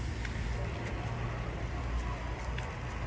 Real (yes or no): yes